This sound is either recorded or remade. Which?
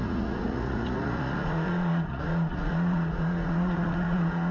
remade